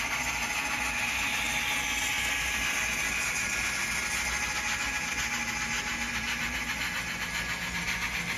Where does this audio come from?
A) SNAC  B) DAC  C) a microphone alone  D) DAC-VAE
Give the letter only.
C